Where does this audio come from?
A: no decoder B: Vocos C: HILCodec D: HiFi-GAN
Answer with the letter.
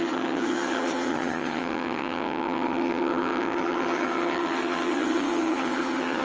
D